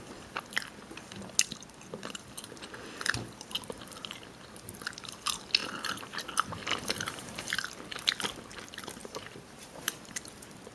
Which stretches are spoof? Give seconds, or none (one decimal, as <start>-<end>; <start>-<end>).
5.6-6.2; 6.7-7.5; 9.0-9.9